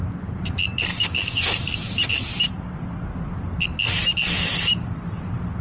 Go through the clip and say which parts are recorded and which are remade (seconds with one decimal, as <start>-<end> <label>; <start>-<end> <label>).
0.0-0.9 recorded; 0.9-1.6 remade; 1.6-4.0 recorded; 4.0-4.6 remade; 4.6-5.6 recorded